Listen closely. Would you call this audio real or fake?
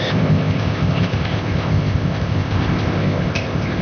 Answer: fake